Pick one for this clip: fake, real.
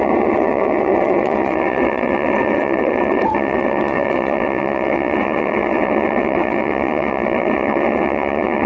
fake